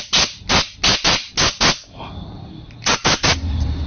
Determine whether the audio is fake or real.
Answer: real